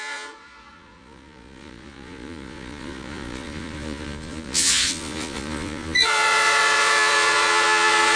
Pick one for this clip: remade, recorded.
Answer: remade